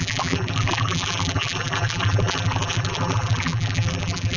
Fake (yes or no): yes